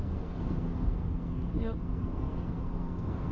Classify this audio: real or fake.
fake